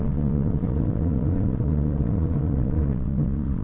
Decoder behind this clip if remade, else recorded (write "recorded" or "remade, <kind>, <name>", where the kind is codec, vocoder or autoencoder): remade, vocoder, Vocos